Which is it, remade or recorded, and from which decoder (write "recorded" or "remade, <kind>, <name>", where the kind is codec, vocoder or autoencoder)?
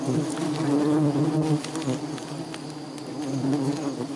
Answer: recorded